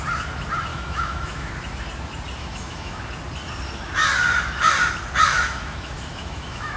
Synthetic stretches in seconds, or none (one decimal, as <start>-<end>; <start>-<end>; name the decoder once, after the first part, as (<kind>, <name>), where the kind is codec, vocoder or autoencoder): 0.7-1.5 (autoencoder, DAC-VAE); 2.4-3.0; 5.3-6.8